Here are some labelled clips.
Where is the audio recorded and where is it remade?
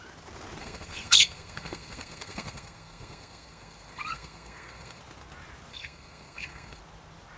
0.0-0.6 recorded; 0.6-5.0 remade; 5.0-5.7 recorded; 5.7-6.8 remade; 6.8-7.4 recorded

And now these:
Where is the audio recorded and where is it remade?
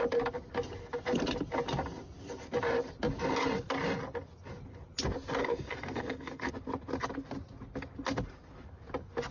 0.0-5.4 recorded; 5.4-6.5 remade; 6.5-9.3 recorded